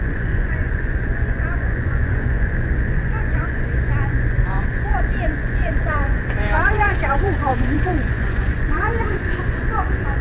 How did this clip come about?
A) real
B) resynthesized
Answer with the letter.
B